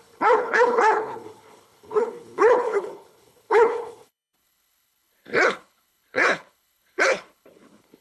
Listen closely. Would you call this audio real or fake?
fake